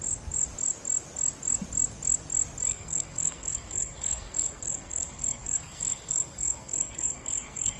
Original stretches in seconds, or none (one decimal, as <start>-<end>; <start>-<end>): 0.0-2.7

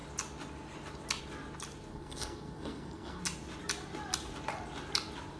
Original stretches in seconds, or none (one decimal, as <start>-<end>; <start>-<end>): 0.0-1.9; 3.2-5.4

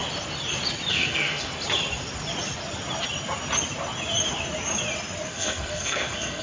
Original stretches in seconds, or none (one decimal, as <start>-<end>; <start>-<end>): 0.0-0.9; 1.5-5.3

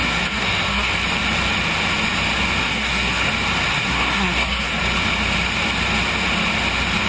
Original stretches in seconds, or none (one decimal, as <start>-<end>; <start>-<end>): 0.9-2.6; 3.3-3.7; 4.8-7.1

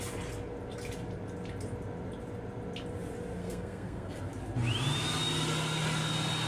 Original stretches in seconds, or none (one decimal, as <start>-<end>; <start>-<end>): 0.0-3.4; 4.2-6.5

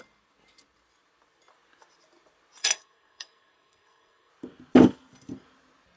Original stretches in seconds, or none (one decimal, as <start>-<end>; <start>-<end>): 0.0-2.6; 4.3-6.0

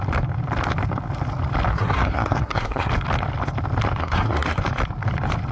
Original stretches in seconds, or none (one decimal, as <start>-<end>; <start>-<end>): 0.0-1.7; 2.9-4.0; 4.6-5.5

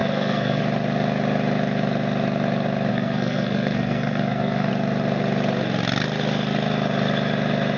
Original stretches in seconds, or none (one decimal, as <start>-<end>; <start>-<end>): 0.6-2.9; 4.7-7.8